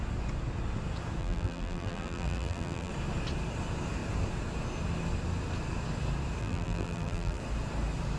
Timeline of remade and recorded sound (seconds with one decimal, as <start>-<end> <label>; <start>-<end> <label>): 0.0-1.2 recorded; 1.2-2.9 remade; 2.9-6.4 recorded; 6.4-7.4 remade; 7.4-8.2 recorded